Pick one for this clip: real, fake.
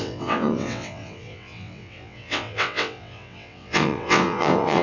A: fake